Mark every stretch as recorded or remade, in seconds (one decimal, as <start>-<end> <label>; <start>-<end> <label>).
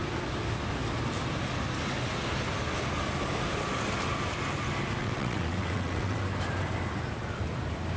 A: 0.0-5.0 recorded; 5.0-6.2 remade; 6.2-8.0 recorded